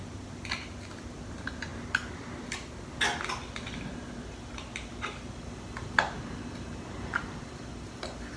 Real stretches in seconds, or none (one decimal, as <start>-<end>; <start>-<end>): 0.0-8.4